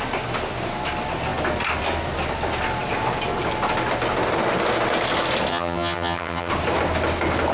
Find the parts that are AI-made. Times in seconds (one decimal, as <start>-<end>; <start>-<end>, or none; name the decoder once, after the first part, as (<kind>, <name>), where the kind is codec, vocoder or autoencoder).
5.5-6.5 (vocoder, HiFi-GAN)